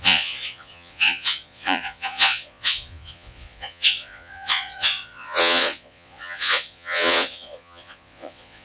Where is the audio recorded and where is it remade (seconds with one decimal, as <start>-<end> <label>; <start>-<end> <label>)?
0.0-8.6 remade